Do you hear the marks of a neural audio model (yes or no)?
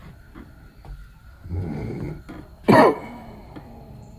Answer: no